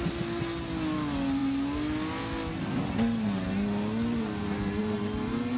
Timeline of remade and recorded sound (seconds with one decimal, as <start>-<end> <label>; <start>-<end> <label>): 0.0-5.6 recorded